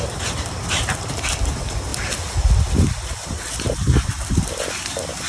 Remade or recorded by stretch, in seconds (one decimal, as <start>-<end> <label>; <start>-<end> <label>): 0.0-5.3 recorded